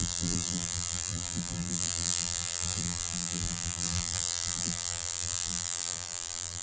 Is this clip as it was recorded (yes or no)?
no